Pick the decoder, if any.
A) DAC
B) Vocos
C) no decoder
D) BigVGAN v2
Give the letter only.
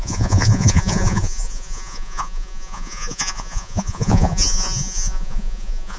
B